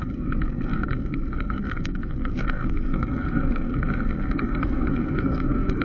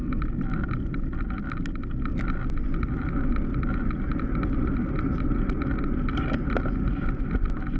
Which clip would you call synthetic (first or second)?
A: first